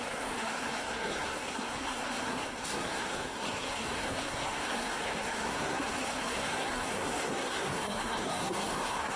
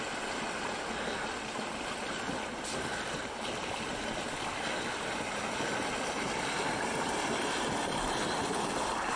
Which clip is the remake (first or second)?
first